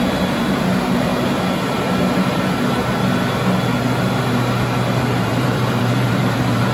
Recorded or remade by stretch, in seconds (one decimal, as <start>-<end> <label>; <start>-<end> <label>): 0.0-1.1 remade; 1.1-5.0 recorded; 5.0-6.7 remade